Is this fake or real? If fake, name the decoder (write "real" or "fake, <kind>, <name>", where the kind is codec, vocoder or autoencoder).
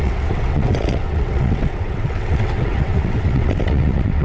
fake, vocoder, WaveNeXt